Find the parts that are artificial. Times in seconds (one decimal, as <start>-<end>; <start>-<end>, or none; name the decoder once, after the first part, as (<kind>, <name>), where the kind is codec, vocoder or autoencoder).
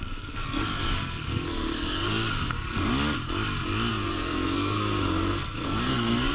0.0-2.9 (codec, SNAC); 3.9-6.3